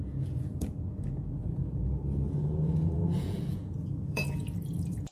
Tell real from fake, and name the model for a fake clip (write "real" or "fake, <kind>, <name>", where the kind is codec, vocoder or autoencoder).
fake, vocoder, Vocos